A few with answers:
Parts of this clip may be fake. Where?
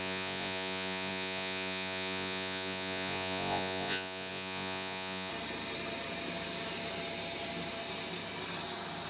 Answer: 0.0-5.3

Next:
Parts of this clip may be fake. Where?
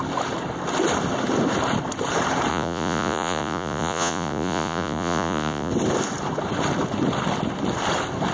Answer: 2.5-5.7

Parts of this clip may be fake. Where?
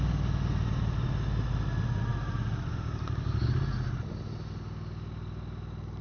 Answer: none